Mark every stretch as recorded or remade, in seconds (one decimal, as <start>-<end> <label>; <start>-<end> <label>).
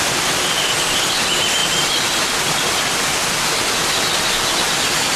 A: 0.0-5.2 recorded